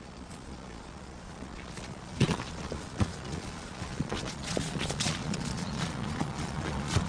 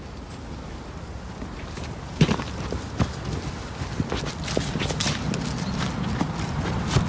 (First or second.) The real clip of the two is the second